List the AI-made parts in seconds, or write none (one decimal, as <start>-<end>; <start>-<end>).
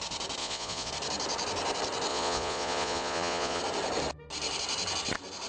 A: 0.4-0.9; 2.1-3.6